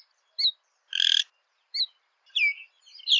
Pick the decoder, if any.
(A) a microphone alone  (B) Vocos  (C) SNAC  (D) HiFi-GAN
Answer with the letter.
A